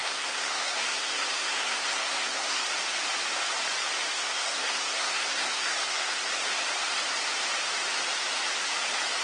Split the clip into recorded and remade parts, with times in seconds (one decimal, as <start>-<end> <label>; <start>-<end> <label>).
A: 0.0-2.7 remade; 2.7-4.1 recorded; 4.1-6.3 remade; 6.3-9.2 recorded